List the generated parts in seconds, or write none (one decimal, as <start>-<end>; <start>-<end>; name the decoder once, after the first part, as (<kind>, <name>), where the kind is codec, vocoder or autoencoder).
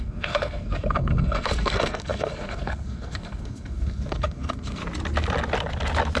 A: 0.0-4.8 (codec, SNAC)